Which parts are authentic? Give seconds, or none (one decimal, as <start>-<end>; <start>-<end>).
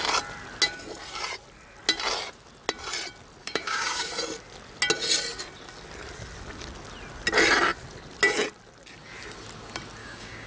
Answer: 0.0-3.4; 4.1-10.0